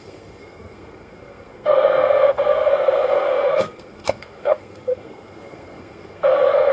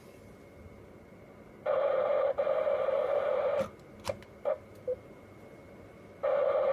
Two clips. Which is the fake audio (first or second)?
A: first